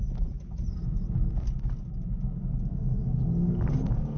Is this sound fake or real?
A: real